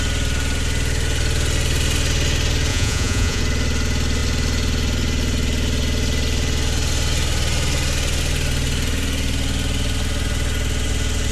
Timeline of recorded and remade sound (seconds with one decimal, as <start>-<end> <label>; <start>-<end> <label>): 0.0-2.7 recorded; 2.7-3.4 remade; 3.4-11.3 recorded